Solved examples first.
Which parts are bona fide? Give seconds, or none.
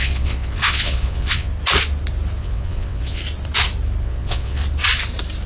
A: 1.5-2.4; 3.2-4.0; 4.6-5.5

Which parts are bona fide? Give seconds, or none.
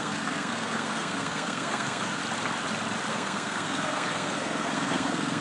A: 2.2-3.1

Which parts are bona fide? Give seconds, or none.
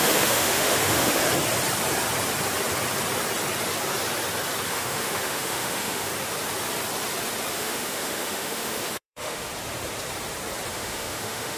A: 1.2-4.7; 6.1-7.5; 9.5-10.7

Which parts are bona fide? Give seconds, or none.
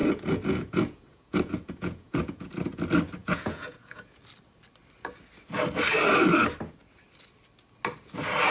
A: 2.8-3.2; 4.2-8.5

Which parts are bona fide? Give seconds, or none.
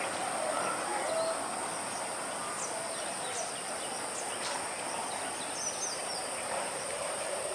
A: 0.0-6.0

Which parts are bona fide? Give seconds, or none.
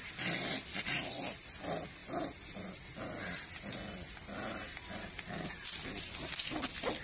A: 0.0-7.0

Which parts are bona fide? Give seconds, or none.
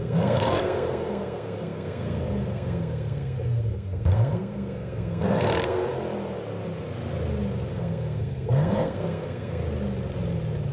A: 5.9-7.7; 9.6-10.7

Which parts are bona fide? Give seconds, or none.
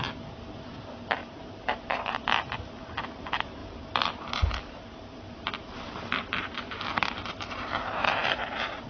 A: 0.0-1.2; 2.1-3.6